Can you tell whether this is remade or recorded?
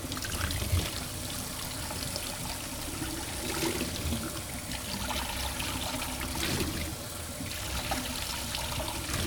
recorded